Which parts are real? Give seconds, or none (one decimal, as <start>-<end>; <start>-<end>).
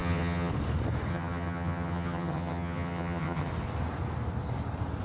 0.5-1.1; 3.5-5.0